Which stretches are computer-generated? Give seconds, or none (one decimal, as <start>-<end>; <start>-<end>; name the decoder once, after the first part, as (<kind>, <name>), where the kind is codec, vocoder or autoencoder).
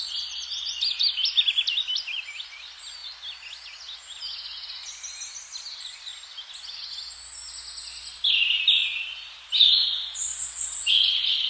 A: 0.0-3.0 (vocoder, BigVGAN v2); 5.3-6.1; 9.5-10.3; 10.9-11.5